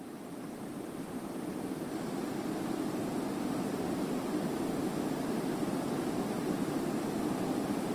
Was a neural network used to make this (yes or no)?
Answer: yes